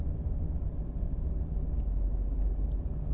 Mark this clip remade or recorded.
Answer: recorded